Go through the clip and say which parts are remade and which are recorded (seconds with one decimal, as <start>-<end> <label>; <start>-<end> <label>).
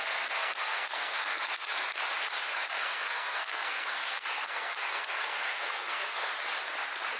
0.0-1.9 remade; 1.9-2.4 recorded; 2.4-6.3 remade; 6.3-7.2 recorded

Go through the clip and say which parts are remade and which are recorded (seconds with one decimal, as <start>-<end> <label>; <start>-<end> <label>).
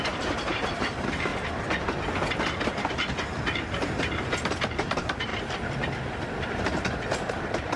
0.0-1.3 remade; 1.3-3.7 recorded; 3.7-5.3 remade; 5.3-7.3 recorded; 7.3-7.8 remade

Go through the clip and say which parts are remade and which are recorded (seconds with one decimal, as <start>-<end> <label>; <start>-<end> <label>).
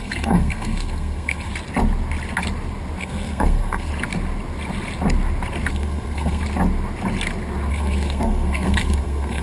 0.0-1.5 remade; 1.5-3.0 recorded; 3.0-3.9 remade; 3.9-5.7 recorded; 5.7-6.4 remade; 6.4-7.7 recorded; 7.7-9.4 remade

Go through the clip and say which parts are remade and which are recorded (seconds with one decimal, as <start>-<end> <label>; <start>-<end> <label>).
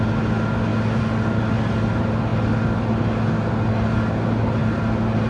0.0-5.3 recorded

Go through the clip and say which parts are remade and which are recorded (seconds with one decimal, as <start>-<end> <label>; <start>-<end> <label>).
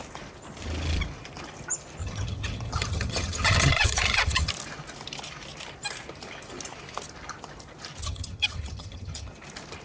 0.0-2.0 recorded; 2.0-4.5 remade; 4.5-8.0 recorded; 8.0-9.3 remade; 9.3-9.8 recorded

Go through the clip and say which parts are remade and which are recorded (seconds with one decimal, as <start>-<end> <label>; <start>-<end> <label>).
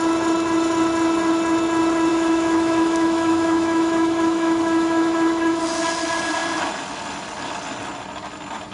0.0-2.1 recorded; 2.1-5.6 remade; 5.6-8.7 recorded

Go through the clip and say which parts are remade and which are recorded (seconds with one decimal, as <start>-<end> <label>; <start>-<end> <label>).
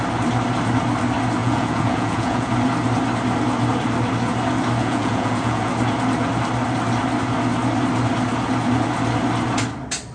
0.0-1.4 recorded; 1.4-2.5 remade; 2.5-4.8 recorded; 4.8-5.7 remade; 5.7-10.1 recorded